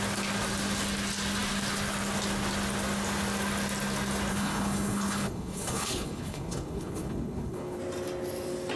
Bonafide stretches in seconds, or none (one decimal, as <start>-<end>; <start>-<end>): 0.0-4.3; 7.8-8.8